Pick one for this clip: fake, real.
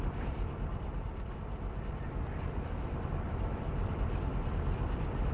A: real